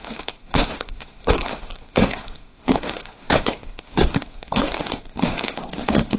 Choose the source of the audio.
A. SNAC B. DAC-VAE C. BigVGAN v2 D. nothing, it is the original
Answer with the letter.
A